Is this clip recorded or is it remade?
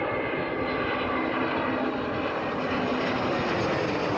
recorded